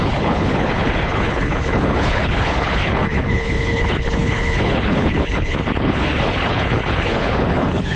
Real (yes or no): no